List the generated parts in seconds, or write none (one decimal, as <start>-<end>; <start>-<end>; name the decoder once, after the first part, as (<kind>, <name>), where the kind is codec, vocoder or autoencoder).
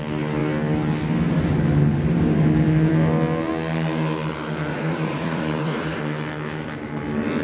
4.7-6.0 (vocoder, Vocos)